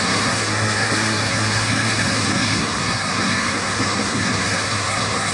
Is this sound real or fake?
fake